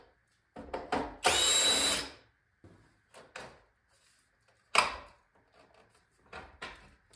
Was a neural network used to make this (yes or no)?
no